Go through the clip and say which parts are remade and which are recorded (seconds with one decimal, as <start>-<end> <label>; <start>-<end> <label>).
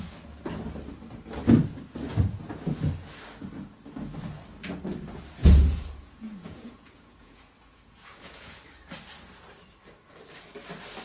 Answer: 0.0-5.4 recorded; 5.4-8.6 remade; 8.6-11.0 recorded